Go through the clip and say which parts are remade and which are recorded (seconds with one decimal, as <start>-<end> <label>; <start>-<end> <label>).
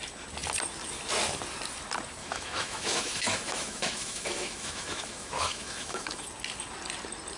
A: 0.0-2.2 recorded; 2.2-6.2 remade; 6.2-7.4 recorded